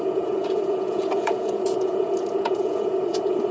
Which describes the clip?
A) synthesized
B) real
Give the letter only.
A